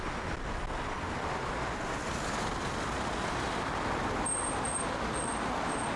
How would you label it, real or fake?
real